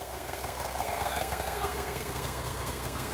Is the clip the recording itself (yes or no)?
no